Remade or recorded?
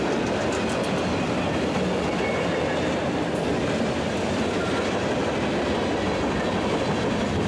recorded